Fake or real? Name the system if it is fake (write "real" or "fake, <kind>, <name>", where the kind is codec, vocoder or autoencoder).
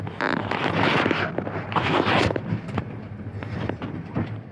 fake, vocoder, BigVGAN v2